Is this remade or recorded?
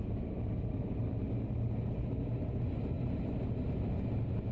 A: recorded